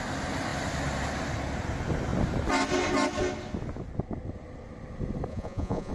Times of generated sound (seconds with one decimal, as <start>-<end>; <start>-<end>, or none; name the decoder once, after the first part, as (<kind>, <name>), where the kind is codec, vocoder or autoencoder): 5.3-5.9 (vocoder, Vocos)